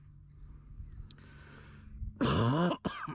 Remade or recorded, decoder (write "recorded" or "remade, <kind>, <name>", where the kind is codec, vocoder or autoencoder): recorded